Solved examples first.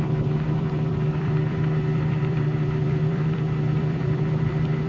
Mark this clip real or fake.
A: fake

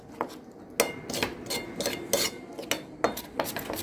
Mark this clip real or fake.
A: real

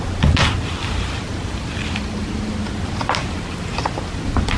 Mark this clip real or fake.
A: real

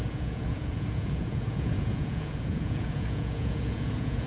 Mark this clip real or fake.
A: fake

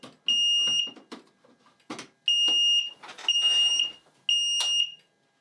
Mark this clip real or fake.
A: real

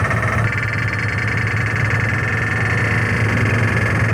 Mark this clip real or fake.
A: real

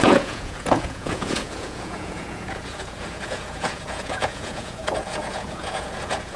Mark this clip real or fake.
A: fake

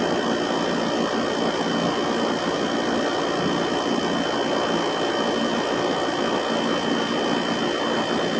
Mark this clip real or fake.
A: real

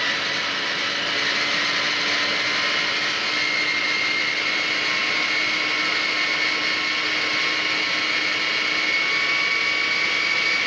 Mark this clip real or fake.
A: real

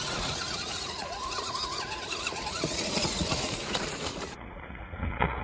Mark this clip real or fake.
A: fake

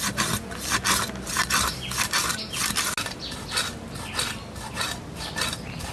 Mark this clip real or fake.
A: real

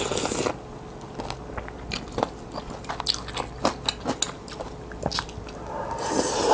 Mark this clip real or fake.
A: real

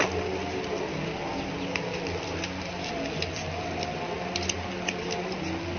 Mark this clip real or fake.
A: real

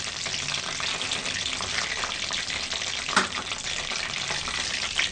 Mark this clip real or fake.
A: real